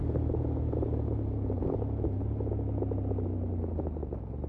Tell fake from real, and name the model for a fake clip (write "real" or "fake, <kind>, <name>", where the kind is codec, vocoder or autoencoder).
real